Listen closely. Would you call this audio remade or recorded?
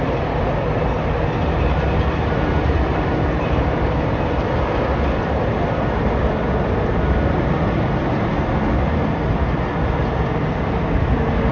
recorded